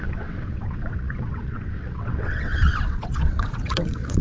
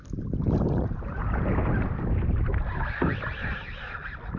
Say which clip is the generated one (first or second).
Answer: first